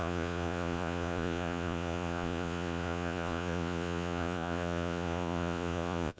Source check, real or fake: fake